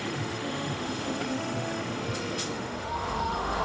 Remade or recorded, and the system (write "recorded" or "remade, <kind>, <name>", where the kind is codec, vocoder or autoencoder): remade, autoencoder, DAC-VAE